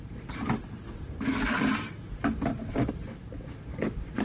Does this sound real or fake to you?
real